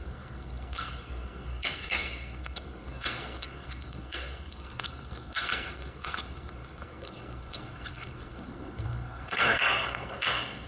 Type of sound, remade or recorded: remade